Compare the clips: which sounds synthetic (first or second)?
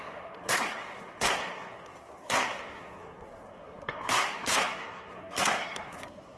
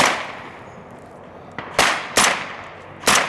first